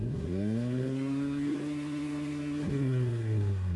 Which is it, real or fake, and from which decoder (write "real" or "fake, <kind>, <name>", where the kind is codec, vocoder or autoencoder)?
fake, codec, SNAC